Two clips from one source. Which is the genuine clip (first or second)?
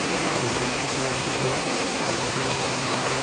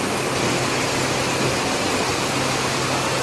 second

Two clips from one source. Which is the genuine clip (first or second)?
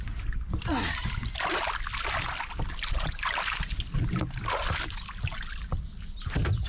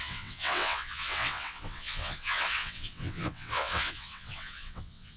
first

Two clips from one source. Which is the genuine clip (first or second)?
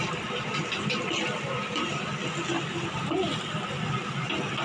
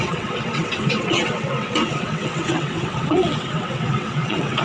first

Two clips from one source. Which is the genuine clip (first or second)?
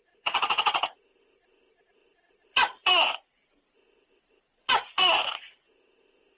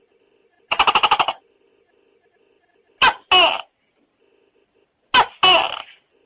second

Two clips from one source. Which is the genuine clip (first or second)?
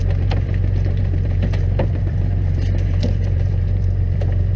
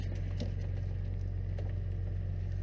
second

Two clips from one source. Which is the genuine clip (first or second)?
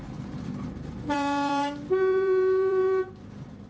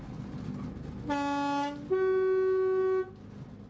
second